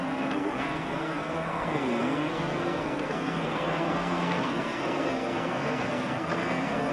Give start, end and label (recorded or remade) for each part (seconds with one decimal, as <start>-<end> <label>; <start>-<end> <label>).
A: 0.0-6.9 remade